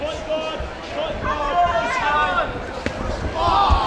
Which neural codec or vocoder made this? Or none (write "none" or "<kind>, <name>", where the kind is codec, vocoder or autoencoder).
none